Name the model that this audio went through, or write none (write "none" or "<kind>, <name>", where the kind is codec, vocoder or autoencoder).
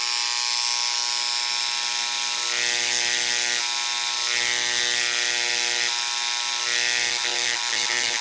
none